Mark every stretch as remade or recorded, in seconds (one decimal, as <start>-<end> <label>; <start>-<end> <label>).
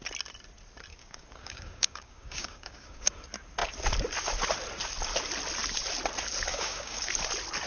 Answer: 0.0-0.9 recorded; 0.9-3.1 remade; 3.1-6.5 recorded; 6.5-7.1 remade; 7.1-7.7 recorded